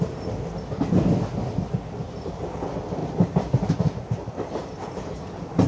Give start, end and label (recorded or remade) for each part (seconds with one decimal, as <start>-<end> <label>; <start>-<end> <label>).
0.0-5.7 recorded